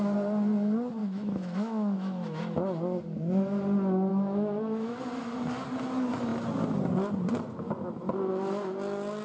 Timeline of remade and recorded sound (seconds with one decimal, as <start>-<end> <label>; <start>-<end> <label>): 0.0-1.0 recorded; 1.0-2.4 remade; 2.4-4.1 recorded; 4.1-5.0 remade; 5.0-9.2 recorded

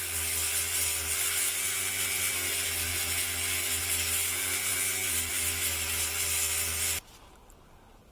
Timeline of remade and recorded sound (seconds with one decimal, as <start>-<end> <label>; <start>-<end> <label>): 0.0-8.1 recorded

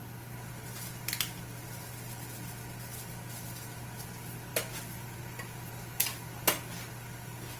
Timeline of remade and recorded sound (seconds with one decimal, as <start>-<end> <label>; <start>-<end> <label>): 0.0-7.6 recorded

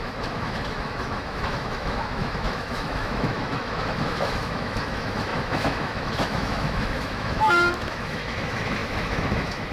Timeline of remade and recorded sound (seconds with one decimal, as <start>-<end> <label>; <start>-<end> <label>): 0.0-9.7 remade